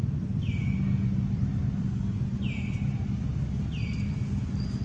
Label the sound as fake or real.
real